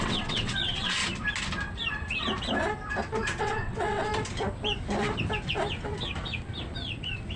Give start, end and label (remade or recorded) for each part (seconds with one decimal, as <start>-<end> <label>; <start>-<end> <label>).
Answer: 0.0-1.0 remade; 1.0-3.4 recorded; 3.4-4.1 remade; 4.1-7.4 recorded